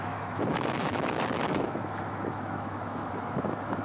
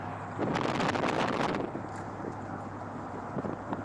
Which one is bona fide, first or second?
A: second